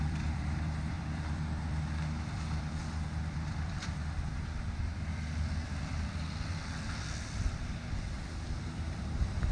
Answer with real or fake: fake